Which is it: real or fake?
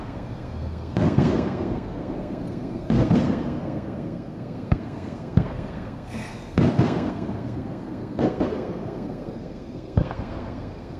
fake